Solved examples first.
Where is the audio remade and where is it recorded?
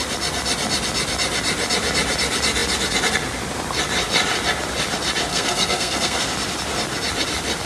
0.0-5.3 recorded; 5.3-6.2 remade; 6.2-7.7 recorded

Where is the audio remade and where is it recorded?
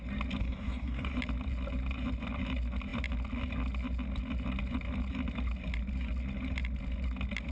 0.0-0.4 recorded; 0.4-1.1 remade; 1.1-7.5 recorded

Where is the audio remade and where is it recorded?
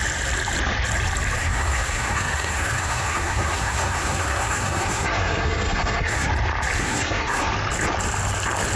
0.0-1.4 recorded; 1.4-6.3 remade; 6.3-6.8 recorded; 6.8-7.5 remade; 7.5-8.8 recorded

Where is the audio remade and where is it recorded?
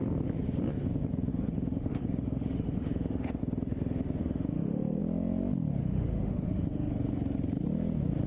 0.0-1.3 recorded; 1.3-3.4 remade; 3.4-4.2 recorded; 4.2-5.0 remade; 5.0-5.8 recorded; 5.8-6.9 remade; 6.9-8.3 recorded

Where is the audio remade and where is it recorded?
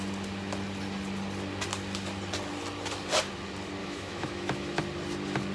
0.0-3.8 recorded; 3.8-4.8 remade; 4.8-5.5 recorded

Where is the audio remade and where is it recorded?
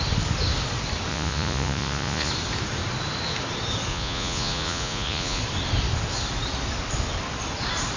0.0-1.1 recorded; 1.1-2.3 remade; 2.3-3.9 recorded; 3.9-5.4 remade; 5.4-8.0 recorded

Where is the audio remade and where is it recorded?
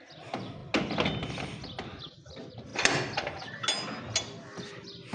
0.0-5.1 recorded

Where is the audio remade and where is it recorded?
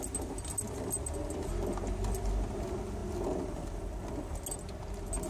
0.0-5.3 recorded